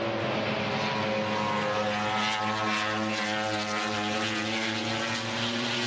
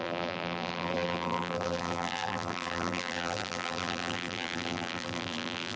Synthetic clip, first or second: second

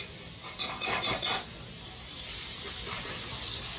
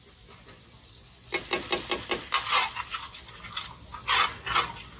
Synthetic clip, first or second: first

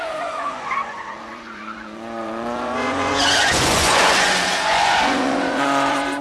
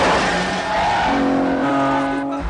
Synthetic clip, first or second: first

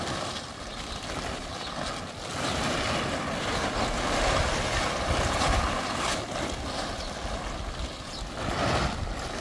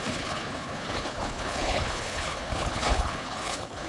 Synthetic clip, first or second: second